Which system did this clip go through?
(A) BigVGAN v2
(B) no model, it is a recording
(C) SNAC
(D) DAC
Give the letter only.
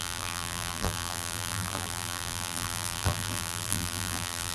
A